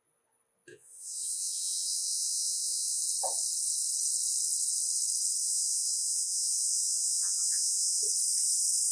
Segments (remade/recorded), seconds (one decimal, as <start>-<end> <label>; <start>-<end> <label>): 0.0-0.7 recorded; 0.7-3.0 remade; 3.0-5.4 recorded; 5.4-8.0 remade; 8.0-8.9 recorded